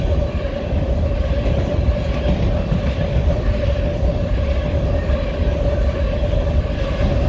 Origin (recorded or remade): recorded